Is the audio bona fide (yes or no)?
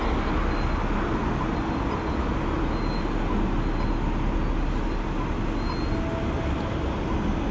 yes